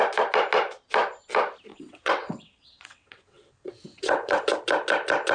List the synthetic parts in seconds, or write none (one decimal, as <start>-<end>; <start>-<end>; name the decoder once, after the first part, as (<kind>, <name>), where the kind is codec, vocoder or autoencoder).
1.7-4.4 (vocoder, WaveNeXt)